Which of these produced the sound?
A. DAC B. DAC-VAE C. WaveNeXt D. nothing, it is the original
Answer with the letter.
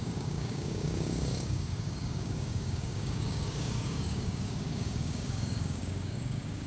A